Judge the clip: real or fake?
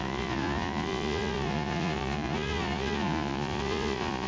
fake